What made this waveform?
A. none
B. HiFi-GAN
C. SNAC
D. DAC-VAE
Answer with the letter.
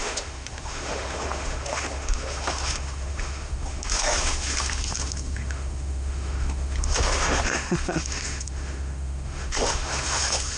D